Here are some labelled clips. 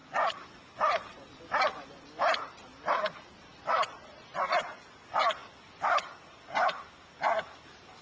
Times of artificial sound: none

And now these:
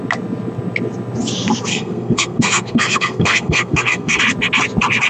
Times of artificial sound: 1.7-4.2 (codec, SNAC)

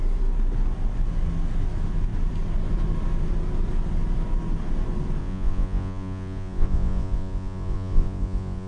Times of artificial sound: 5.2-8.7 (vocoder, Vocos)

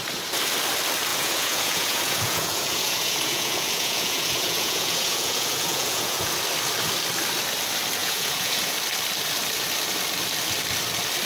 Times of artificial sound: 1.1-6.3 (vocoder, Vocos); 8.0-8.7